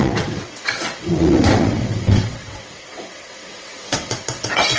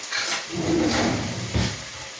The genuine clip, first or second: second